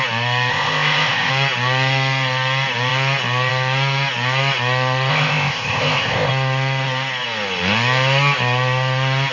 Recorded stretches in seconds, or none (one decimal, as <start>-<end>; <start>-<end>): 0.0-0.5; 1.3-5.1; 6.3-9.3

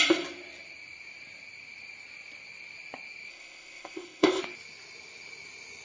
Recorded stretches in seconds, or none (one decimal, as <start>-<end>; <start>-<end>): 0.0-3.3; 4.4-5.8

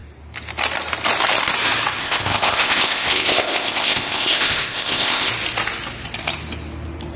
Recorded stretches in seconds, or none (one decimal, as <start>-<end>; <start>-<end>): 0.0-2.0; 5.3-7.2

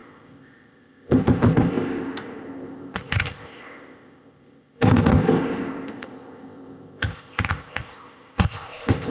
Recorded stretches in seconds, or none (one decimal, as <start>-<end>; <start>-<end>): none

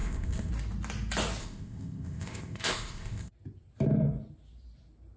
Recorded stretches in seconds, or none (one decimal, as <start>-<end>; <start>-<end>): 0.5-1.4; 3.3-5.2

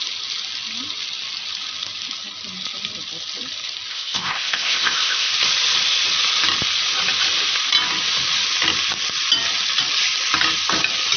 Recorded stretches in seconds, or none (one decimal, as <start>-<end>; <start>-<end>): 0.0-3.9; 5.3-11.2

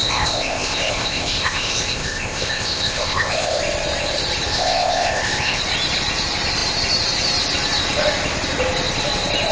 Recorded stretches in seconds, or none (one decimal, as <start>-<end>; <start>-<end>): 3.6-4.5; 5.6-9.5